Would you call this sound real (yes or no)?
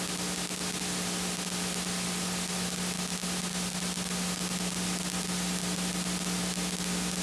yes